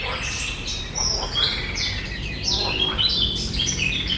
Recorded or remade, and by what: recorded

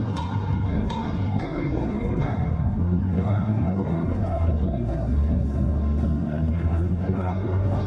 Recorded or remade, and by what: remade, codec, SNAC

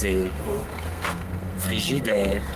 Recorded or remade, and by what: remade, codec, SNAC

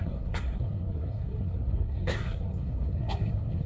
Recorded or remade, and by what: remade, codec, SNAC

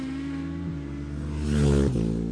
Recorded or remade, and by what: recorded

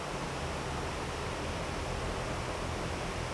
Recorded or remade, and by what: recorded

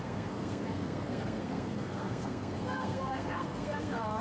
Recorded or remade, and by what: remade, codec, SNAC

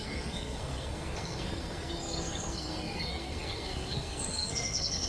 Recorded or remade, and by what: remade, codec, SNAC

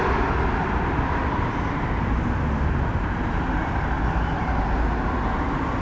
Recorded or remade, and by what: recorded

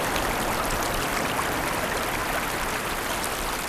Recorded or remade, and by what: recorded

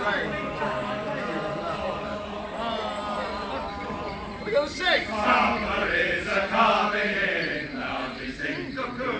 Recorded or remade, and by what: recorded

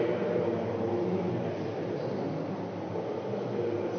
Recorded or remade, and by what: recorded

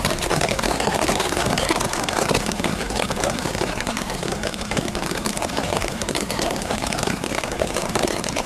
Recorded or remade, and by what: remade, codec, SNAC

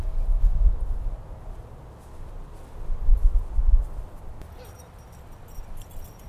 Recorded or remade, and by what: recorded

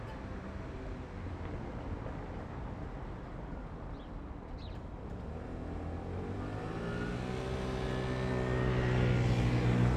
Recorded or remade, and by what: recorded